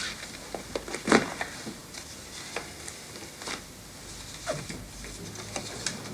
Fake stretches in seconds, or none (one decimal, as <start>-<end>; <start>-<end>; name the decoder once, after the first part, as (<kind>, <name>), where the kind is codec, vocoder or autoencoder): none